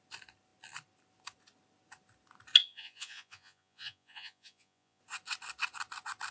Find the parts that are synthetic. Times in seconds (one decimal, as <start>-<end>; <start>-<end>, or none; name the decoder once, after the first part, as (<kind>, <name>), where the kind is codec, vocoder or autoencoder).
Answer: 2.6-5.0 (vocoder, Vocos)